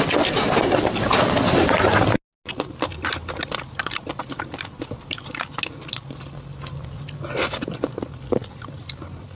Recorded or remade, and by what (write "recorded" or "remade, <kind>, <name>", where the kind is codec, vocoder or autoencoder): recorded